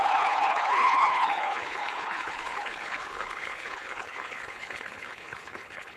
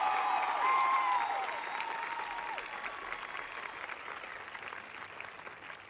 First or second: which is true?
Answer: second